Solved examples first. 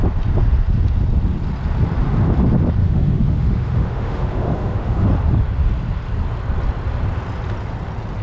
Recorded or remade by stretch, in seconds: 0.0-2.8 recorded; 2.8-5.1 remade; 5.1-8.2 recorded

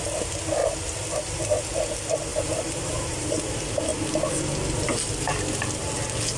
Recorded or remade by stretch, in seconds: 0.0-2.3 recorded; 2.3-3.5 remade; 3.5-6.4 recorded

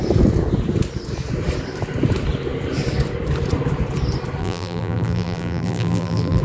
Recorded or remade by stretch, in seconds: 0.0-4.4 recorded; 4.4-6.4 remade

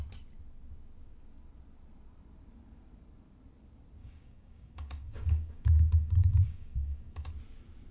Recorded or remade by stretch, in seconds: 0.0-4.0 recorded; 4.0-7.3 remade; 7.3-7.9 recorded

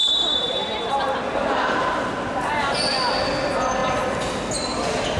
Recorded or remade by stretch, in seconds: 0.0-5.2 recorded

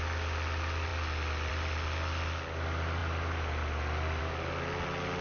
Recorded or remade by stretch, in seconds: 0.0-5.2 recorded